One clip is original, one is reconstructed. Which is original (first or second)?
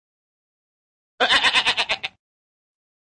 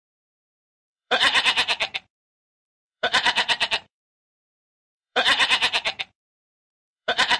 first